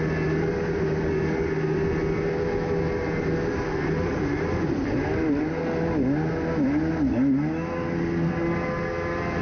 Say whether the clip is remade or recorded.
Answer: recorded